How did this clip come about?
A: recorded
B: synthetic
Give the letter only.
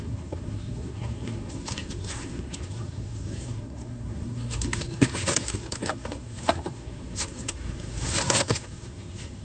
B